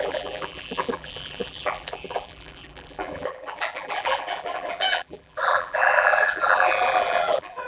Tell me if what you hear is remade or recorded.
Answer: remade